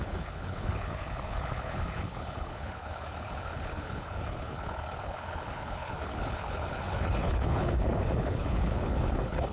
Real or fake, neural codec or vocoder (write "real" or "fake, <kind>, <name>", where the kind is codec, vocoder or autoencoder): fake, codec, HILCodec